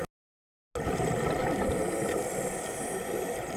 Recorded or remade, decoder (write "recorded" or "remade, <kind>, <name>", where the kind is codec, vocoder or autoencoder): recorded